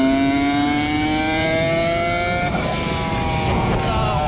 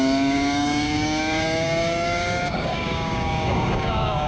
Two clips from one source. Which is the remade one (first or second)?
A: second